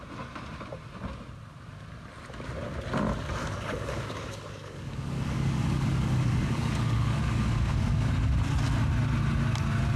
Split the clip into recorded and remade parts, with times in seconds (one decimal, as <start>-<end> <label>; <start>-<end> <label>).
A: 0.0-3.4 recorded; 3.4-8.1 remade; 8.1-10.0 recorded